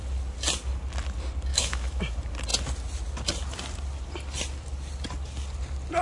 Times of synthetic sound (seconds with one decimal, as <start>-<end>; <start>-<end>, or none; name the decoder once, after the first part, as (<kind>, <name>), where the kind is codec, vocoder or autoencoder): 1.5-2.0 (autoencoder, DAC-VAE)